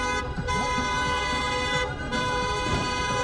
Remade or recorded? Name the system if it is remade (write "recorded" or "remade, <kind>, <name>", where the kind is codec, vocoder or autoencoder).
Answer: remade, vocoder, BigVGAN v2